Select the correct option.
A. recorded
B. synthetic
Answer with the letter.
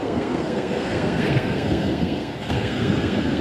B